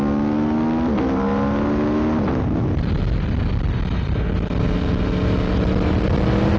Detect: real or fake real